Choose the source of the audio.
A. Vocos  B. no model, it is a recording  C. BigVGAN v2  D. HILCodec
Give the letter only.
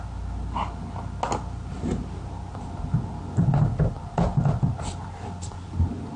B